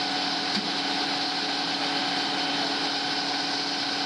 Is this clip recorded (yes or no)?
yes